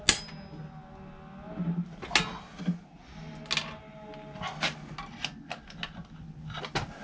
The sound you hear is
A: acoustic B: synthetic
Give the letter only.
A